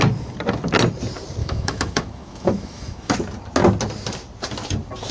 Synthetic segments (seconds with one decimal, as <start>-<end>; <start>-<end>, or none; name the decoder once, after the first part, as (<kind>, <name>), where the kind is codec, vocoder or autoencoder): 1.4-3.1 (autoencoder, DAC-VAE)